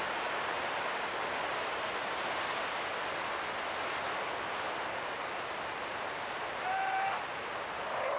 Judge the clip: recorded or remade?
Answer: recorded